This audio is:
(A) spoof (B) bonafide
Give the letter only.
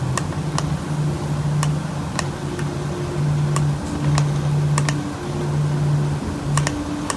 B